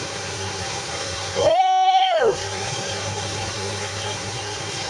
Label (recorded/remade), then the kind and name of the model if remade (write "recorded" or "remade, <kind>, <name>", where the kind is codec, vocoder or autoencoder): remade, codec, SNAC